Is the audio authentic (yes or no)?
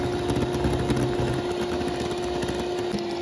yes